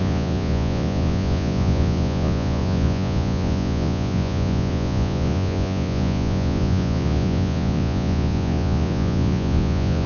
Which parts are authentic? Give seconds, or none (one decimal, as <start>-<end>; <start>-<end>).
none